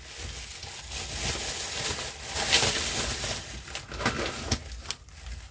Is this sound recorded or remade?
recorded